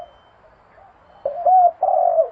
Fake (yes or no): no